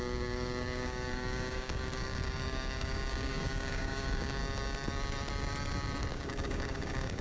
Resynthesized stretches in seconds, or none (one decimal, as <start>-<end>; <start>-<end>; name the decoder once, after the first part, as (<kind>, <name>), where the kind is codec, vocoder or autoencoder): 0.0-4.4 (codec, DAC); 6.1-7.2